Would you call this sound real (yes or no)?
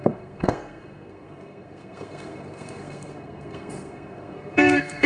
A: no